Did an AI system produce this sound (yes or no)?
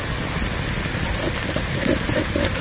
no